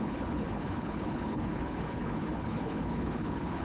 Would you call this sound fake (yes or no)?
yes